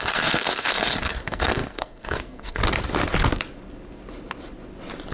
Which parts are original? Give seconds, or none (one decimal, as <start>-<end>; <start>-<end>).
2.6-5.1